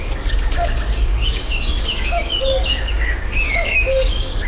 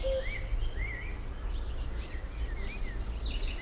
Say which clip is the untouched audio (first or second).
second